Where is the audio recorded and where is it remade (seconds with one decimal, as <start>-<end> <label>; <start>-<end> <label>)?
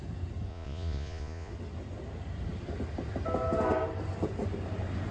0.0-0.5 recorded; 0.5-1.5 remade; 1.5-5.1 recorded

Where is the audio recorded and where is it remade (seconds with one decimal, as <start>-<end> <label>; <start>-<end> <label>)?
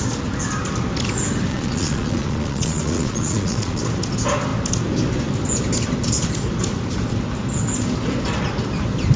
0.0-1.5 recorded; 1.5-3.8 remade; 3.8-9.2 recorded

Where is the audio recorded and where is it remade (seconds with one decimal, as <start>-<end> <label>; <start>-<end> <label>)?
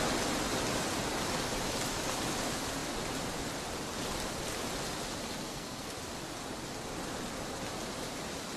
0.0-5.4 recorded; 5.4-6.0 remade; 6.0-8.6 recorded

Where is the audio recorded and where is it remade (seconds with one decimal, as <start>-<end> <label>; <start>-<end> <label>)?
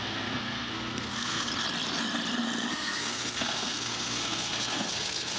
0.0-1.5 remade; 1.5-2.7 recorded; 2.7-5.4 remade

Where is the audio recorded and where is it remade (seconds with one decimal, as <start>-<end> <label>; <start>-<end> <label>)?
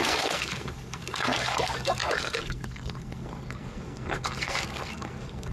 0.0-5.5 remade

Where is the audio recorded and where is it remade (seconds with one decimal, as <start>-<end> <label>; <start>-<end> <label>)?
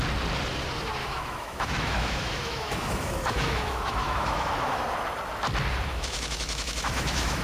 0.0-1.0 recorded; 1.0-4.8 remade; 4.8-5.9 recorded; 5.9-7.4 remade